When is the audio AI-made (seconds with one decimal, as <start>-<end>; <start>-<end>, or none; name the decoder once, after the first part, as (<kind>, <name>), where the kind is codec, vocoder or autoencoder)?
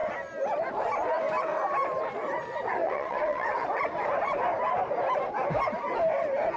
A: 2.8-3.8 (vocoder, WaveNeXt)